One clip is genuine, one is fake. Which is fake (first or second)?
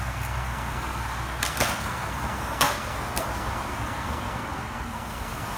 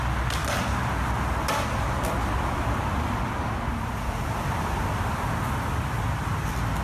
first